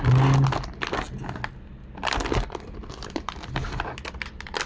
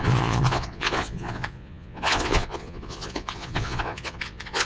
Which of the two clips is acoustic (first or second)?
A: first